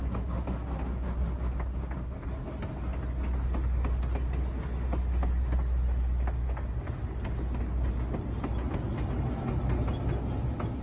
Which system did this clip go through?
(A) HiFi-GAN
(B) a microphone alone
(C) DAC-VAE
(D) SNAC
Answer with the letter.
B